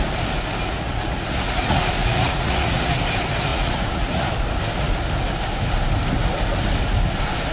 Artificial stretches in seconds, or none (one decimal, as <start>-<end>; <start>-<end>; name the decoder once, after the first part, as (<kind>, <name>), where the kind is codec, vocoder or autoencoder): 0.6-3.0 (vocoder, Vocos); 3.5-4.3